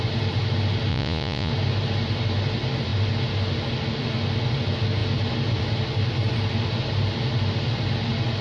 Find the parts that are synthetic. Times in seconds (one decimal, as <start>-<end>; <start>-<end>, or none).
0.9-1.5